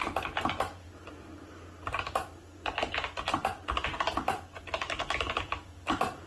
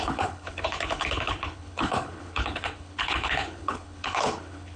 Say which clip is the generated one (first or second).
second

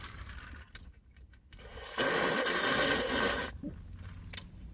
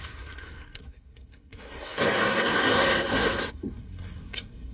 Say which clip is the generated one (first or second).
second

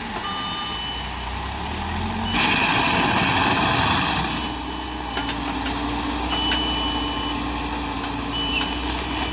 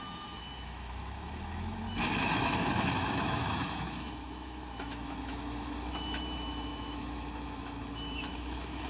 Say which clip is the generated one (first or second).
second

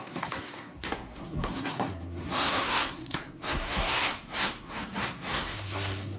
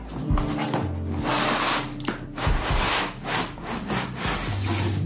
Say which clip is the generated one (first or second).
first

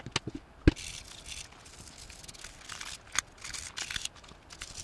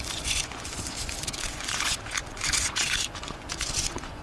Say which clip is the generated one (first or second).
second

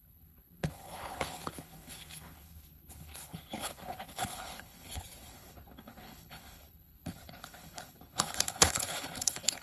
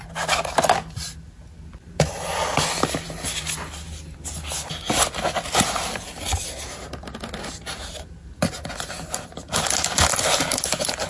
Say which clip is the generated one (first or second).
first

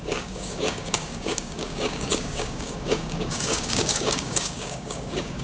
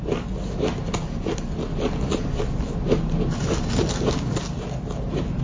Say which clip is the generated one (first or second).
first